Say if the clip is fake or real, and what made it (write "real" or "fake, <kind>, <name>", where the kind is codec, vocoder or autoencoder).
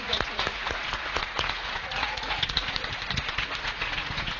fake, vocoder, Vocos